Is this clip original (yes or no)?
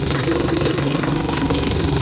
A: no